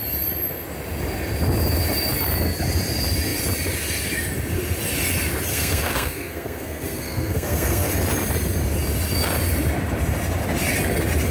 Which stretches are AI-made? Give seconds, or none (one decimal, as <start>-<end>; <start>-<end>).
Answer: 5.5-7.9